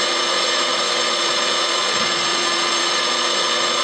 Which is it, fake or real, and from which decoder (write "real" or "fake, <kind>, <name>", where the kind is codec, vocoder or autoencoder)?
fake, vocoder, Vocos